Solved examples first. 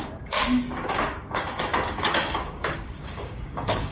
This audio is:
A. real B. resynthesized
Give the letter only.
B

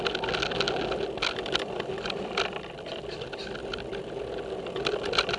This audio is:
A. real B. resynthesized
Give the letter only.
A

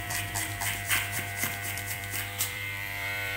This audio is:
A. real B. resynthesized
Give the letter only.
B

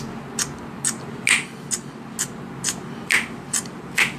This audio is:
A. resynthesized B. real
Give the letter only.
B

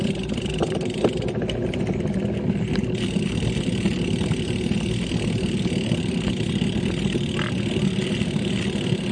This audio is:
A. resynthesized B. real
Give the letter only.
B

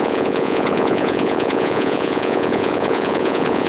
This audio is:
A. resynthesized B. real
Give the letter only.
A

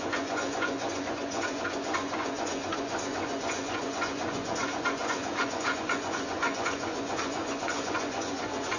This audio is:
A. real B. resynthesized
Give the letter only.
B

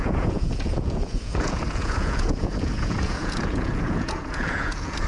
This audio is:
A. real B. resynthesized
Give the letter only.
B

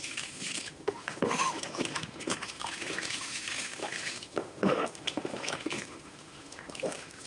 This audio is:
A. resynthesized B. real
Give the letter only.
A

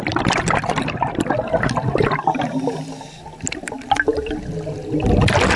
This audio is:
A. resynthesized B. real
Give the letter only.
B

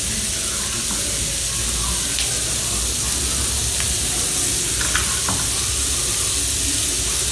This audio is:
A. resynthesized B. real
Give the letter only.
B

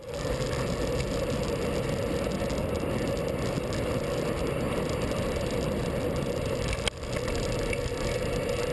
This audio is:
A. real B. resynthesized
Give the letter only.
A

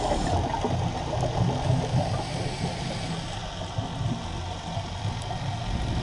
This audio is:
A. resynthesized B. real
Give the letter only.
B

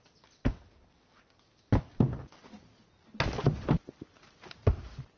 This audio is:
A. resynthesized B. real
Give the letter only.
B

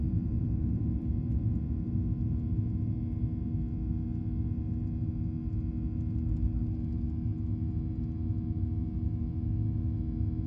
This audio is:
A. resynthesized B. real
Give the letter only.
B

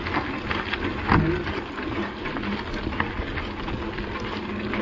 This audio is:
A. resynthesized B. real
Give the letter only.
B